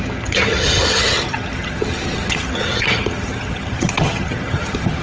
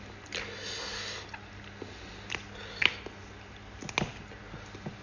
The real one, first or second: second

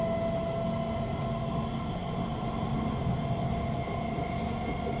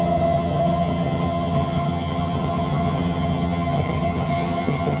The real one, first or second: first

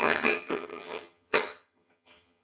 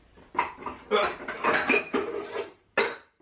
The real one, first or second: second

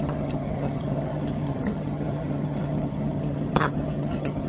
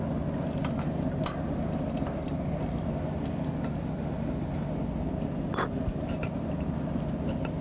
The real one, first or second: second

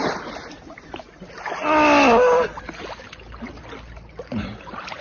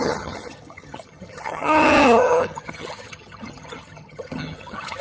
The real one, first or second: first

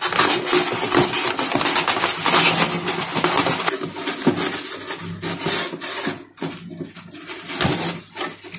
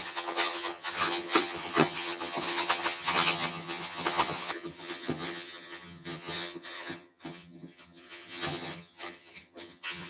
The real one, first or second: first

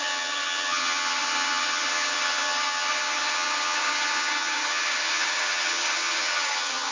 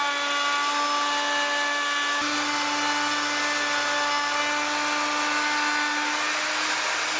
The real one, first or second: second